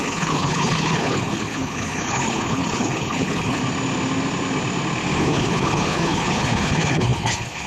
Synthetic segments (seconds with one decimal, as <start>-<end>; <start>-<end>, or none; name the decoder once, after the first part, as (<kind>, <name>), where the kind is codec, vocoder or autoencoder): 0.0-3.6 (codec, HILCodec); 5.2-7.7

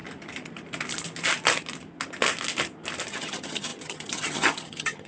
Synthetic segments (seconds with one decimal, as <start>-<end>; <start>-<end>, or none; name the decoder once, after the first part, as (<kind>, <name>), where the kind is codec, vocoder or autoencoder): 3.1-5.1 (vocoder, HiFi-GAN)

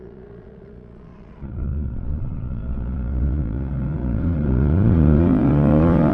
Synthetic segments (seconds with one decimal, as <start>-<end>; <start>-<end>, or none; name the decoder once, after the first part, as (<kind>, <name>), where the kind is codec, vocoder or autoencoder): 0.0-6.1 (vocoder, Vocos)

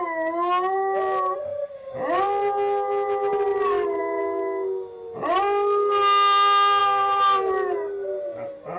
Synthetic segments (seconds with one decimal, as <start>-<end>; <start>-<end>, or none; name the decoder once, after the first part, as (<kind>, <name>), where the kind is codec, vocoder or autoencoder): 3.5-4.0 (vocoder, BigVGAN v2); 6.8-7.5

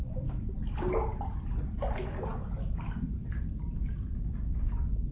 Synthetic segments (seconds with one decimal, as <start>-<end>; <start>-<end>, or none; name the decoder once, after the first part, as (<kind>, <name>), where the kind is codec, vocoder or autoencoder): none